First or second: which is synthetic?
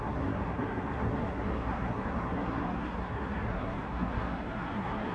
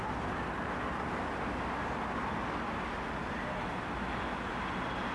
first